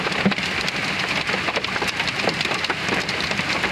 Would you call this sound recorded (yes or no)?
no